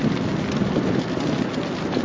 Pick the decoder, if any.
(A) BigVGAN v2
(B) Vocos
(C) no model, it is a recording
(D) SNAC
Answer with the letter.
C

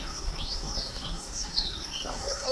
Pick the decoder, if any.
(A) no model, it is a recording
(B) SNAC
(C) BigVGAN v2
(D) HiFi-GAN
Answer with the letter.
B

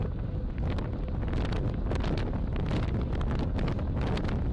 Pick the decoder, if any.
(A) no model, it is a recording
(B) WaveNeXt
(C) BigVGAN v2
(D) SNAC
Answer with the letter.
A